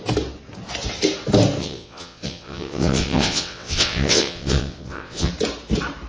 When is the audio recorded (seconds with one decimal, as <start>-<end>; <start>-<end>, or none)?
0.0-1.6; 5.3-6.1

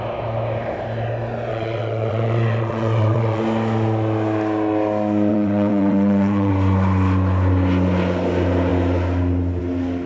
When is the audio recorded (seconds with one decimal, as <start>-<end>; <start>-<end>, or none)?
0.0-1.5; 3.4-5.3; 6.5-10.1